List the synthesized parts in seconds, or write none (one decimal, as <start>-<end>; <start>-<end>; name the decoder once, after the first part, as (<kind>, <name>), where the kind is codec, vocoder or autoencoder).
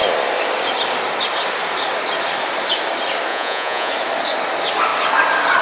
3.3-3.9 (vocoder, Vocos)